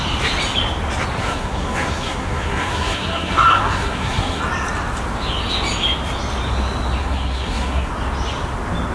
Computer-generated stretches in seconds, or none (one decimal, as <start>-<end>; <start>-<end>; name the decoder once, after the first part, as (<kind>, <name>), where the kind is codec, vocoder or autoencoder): 1.2-4.4 (codec, SNAC); 7.0-7.9